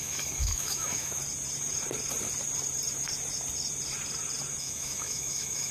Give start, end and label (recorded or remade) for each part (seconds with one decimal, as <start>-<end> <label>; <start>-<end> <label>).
0.0-1.2 remade; 1.2-4.6 recorded; 4.6-5.7 remade

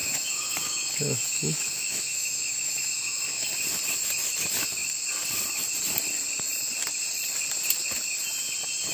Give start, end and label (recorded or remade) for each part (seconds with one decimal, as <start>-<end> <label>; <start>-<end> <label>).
0.0-3.5 remade; 3.5-8.9 recorded

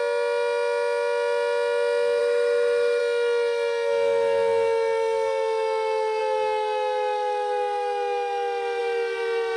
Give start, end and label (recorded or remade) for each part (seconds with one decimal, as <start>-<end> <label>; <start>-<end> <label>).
0.0-2.2 recorded; 2.2-3.0 remade; 3.0-9.6 recorded

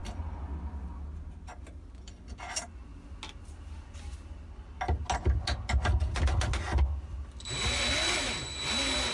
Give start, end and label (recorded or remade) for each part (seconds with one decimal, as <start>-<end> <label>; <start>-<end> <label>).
0.0-9.1 recorded

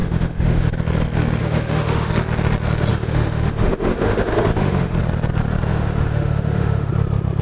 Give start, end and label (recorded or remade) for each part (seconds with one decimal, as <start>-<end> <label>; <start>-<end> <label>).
0.0-0.7 remade; 0.7-1.4 recorded; 1.4-2.1 remade; 2.1-2.9 recorded; 2.9-5.0 remade; 5.0-5.7 recorded; 5.7-6.9 remade; 6.9-7.4 recorded